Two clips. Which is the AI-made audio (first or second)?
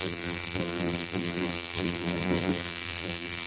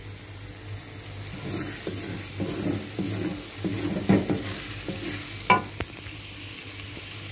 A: first